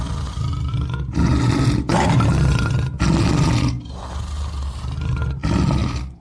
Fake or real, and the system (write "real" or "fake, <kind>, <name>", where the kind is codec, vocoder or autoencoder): real